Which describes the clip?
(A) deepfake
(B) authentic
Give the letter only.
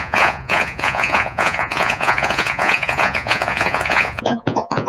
A